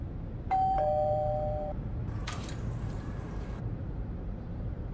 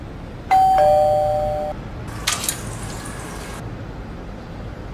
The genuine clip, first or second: second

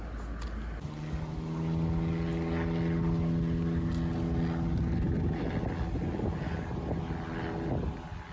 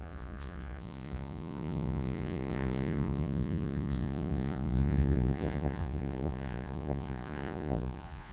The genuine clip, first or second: first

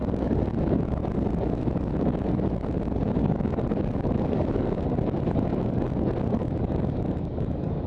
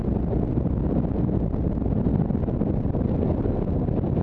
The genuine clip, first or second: second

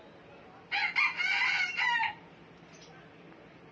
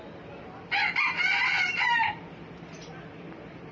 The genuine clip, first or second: first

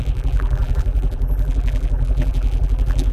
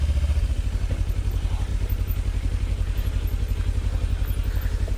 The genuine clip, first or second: second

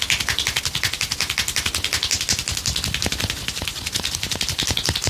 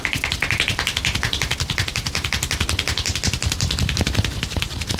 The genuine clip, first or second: first